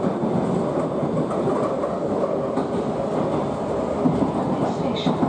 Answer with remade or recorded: recorded